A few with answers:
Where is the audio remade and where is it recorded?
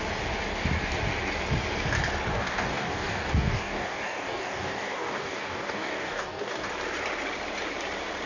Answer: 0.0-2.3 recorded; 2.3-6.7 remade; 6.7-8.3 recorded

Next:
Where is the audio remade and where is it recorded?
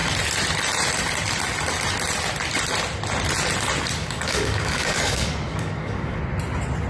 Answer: 0.0-4.0 recorded; 4.0-6.2 remade; 6.2-6.9 recorded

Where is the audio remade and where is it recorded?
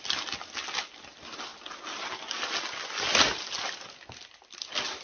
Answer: 0.0-5.0 recorded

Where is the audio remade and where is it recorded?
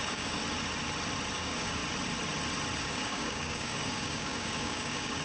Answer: 0.0-0.4 remade; 0.4-1.3 recorded; 1.3-1.8 remade; 1.8-2.8 recorded; 2.8-5.2 remade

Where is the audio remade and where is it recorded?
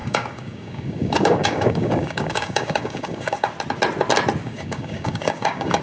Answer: 0.0-3.5 remade; 3.5-4.4 recorded; 4.4-5.8 remade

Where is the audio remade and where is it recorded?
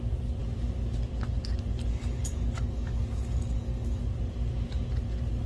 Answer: 0.0-1.9 recorded; 1.9-4.0 remade; 4.0-5.5 recorded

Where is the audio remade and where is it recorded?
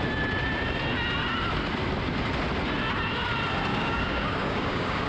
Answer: 0.0-3.7 recorded; 3.7-5.1 remade